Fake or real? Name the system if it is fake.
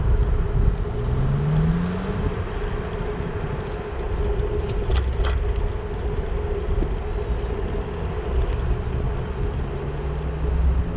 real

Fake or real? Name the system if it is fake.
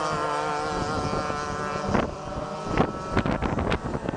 real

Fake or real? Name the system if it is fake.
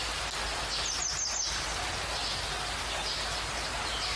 real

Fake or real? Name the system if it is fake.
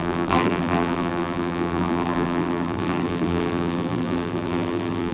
fake, vocoder, BigVGAN v2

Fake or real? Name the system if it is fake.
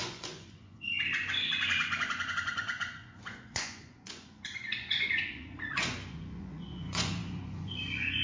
fake, vocoder, Vocos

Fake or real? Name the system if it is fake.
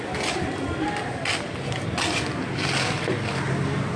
real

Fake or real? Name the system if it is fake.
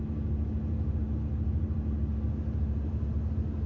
real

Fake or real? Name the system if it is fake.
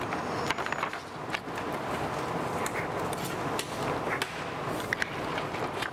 real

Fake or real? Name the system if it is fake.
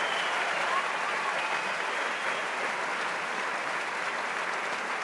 real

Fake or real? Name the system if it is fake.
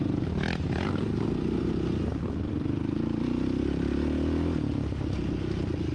real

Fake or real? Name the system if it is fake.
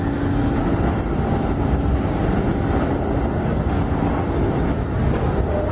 real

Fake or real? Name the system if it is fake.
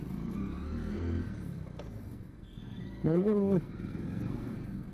fake, codec, SNAC